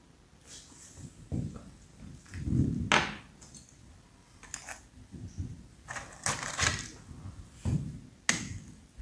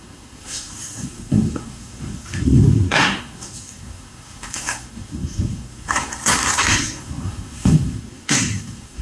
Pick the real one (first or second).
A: first